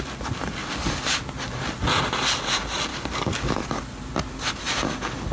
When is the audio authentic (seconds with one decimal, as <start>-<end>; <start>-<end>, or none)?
0.0-2.9; 3.7-5.3